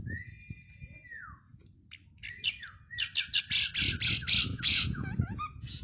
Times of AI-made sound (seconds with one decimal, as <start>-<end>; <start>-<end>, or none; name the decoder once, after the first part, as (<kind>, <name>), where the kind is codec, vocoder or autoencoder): 4.5-5.8 (vocoder, Vocos)